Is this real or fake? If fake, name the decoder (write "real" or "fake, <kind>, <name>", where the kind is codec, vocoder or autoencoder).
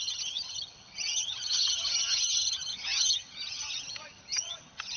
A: fake, vocoder, HiFi-GAN